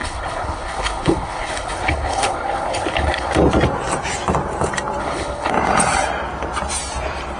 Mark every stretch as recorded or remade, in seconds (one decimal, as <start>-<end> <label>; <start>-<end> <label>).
0.0-3.3 remade; 3.3-5.0 recorded; 5.0-5.5 remade; 5.5-7.4 recorded